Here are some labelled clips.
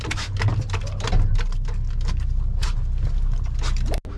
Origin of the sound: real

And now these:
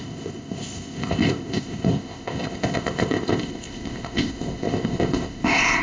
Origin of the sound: fake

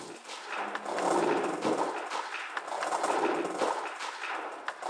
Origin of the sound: real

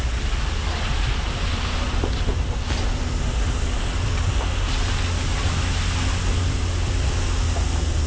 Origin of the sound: real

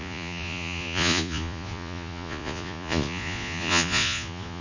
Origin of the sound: fake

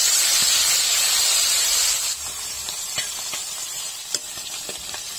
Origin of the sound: fake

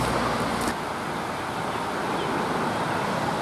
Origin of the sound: real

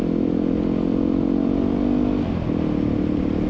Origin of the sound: real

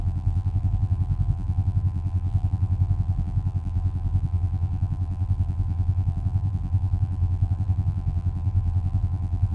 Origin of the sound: fake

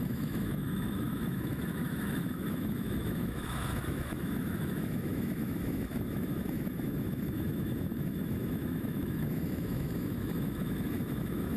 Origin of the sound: fake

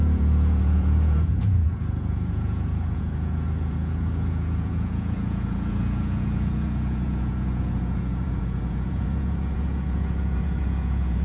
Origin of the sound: fake